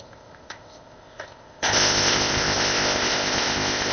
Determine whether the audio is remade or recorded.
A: remade